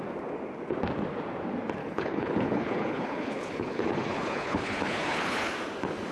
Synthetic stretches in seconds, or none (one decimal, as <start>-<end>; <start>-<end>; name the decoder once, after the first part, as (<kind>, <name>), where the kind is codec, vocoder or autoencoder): 1.8-5.5 (codec, HILCodec)